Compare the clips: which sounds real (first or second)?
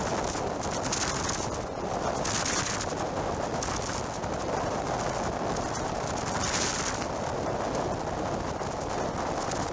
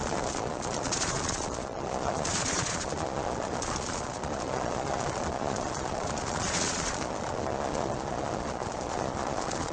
first